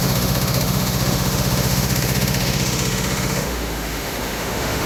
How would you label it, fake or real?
fake